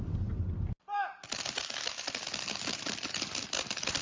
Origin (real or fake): real